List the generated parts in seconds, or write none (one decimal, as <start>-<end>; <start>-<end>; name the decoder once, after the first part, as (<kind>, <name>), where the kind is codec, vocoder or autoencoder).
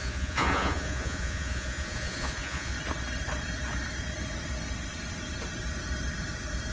0.0-2.7 (vocoder, Vocos)